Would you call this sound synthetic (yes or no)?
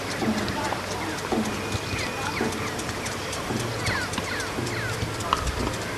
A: no